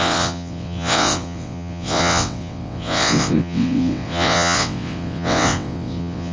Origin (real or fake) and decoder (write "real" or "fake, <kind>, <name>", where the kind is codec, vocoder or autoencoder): fake, vocoder, WaveNeXt